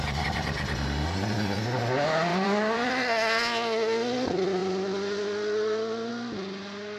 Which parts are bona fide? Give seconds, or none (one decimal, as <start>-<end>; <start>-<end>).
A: 0.0-2.3; 2.9-4.6; 6.1-7.0